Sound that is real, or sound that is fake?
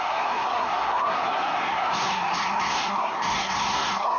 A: fake